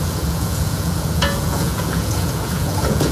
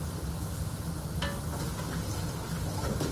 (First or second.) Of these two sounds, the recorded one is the second